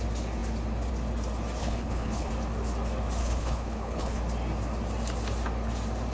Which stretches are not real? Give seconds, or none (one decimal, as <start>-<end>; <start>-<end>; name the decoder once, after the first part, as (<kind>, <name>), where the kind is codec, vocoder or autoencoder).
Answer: 1.6-2.3 (codec, HILCodec); 3.2-4.2